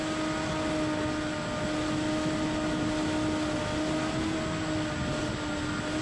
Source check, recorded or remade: recorded